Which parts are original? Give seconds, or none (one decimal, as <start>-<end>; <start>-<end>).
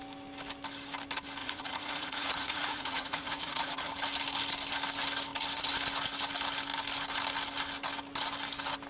0.0-1.4; 3.9-8.9